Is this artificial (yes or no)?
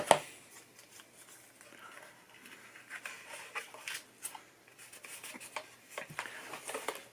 no